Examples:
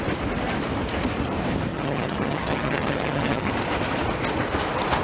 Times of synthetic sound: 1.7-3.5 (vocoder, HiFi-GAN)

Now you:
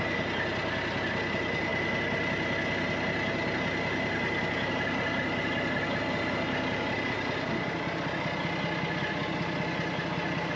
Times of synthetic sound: none